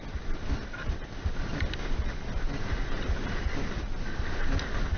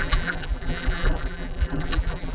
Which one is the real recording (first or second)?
first